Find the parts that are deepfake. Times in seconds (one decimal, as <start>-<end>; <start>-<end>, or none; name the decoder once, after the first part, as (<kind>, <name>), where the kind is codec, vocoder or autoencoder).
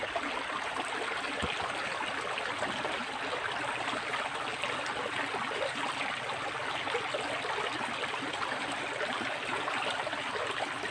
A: none